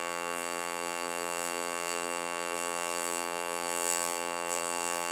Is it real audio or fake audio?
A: fake